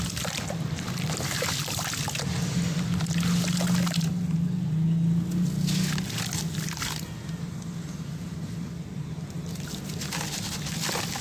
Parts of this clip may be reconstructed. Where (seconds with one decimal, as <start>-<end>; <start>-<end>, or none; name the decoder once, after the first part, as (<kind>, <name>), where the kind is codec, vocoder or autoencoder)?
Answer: none